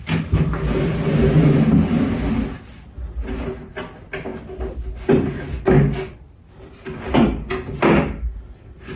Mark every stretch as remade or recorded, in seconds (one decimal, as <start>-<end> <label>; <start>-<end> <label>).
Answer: 0.0-9.0 recorded